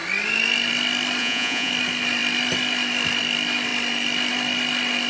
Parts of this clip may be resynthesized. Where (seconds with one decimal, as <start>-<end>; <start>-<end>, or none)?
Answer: 1.2-1.7